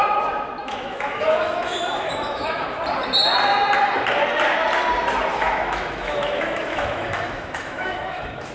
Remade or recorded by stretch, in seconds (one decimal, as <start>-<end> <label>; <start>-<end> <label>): 0.0-0.6 recorded; 0.6-2.8 remade; 2.8-5.3 recorded; 5.3-8.5 remade